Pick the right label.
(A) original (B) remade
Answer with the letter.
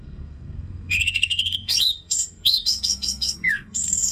B